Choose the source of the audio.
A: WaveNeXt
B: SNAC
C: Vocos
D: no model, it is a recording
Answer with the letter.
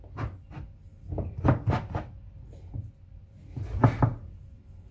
D